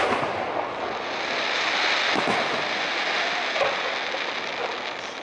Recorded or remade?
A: recorded